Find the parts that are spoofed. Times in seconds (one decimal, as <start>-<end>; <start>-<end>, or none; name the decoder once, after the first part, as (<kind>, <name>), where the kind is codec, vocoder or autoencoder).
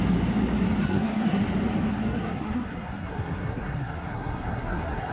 0.8-1.4 (codec, SNAC); 1.9-5.1